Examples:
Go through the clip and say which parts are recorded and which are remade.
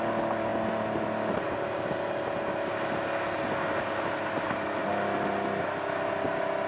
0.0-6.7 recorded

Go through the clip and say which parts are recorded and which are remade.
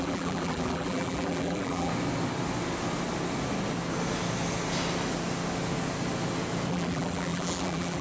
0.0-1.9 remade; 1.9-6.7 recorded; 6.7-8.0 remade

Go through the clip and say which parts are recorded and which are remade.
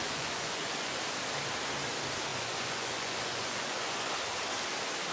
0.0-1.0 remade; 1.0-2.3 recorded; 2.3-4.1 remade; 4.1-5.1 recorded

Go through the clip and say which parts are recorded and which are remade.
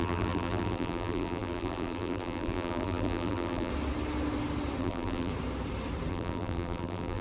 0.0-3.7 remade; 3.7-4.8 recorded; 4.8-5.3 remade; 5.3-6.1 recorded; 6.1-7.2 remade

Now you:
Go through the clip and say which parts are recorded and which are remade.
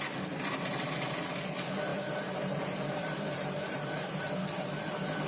0.0-1.9 recorded; 1.9-4.2 remade; 4.2-5.3 recorded